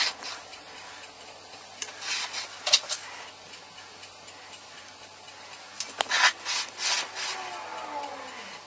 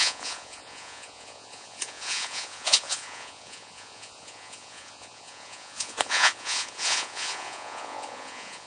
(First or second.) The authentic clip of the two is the first